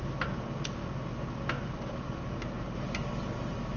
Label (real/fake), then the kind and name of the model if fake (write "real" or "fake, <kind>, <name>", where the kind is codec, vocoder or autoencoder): real